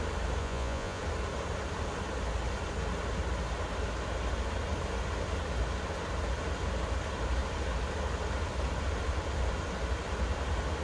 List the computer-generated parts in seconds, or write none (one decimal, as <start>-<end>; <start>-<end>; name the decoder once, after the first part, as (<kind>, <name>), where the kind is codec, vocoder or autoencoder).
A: 0.4-1.0 (vocoder, Vocos)